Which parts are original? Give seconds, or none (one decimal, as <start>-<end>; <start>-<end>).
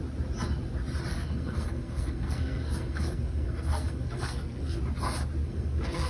0.0-1.1; 4.8-5.4